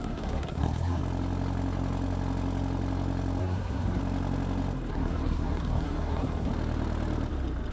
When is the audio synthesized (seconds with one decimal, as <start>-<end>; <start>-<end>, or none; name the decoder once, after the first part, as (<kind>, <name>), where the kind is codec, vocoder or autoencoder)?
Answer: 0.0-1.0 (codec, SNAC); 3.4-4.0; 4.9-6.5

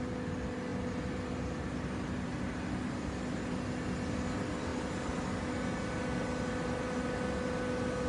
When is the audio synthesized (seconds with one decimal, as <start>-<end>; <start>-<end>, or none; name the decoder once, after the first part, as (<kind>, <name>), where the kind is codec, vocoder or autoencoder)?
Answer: none

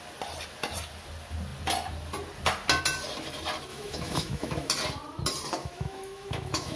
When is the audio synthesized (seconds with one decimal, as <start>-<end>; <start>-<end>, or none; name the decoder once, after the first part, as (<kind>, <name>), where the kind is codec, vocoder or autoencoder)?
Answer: 3.7-4.7 (autoencoder, DAC-VAE); 5.6-6.8